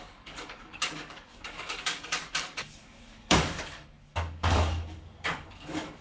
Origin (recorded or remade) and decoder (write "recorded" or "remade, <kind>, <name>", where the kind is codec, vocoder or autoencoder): remade, codec, DAC